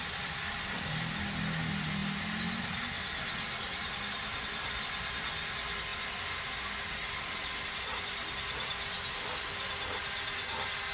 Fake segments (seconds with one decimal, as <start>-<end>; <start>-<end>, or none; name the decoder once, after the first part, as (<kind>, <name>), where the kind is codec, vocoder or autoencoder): none